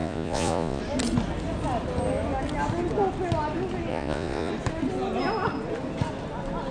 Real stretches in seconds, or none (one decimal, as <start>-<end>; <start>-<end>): 0.8-3.9; 4.5-6.7